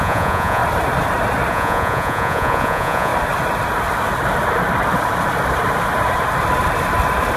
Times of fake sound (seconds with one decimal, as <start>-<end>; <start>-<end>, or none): 0.0-0.6; 1.5-3.1